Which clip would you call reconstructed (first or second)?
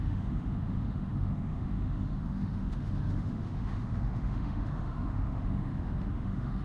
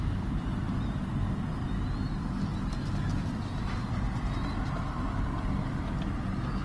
first